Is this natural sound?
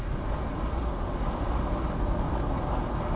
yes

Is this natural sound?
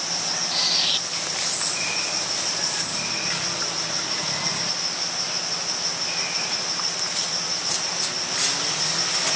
yes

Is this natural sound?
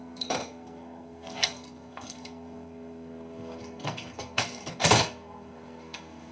no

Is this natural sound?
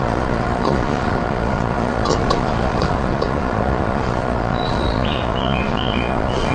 no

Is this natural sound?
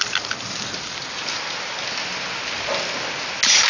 yes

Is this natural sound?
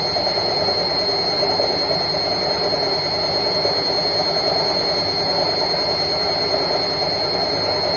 yes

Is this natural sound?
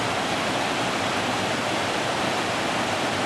yes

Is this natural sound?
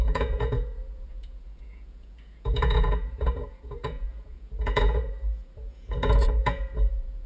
no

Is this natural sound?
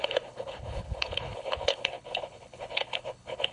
no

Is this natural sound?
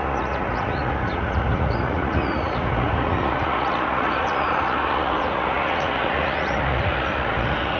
no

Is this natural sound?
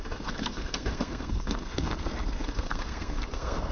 no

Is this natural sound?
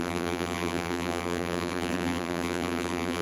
no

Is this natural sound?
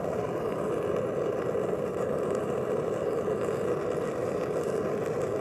yes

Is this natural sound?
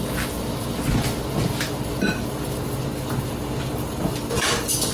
yes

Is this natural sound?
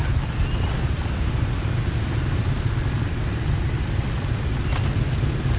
yes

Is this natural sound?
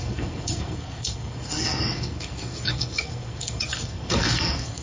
no